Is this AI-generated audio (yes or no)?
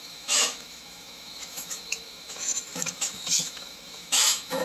yes